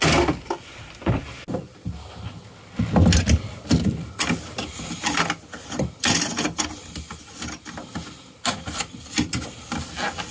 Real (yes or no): yes